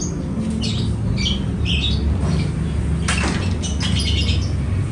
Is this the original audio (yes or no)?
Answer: yes